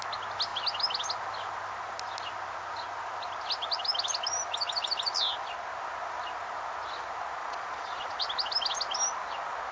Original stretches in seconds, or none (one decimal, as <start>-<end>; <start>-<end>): 0.0-7.4; 8.3-9.7